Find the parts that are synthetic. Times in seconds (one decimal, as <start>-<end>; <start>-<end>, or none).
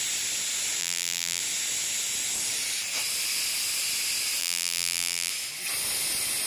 0.8-1.4; 4.4-5.3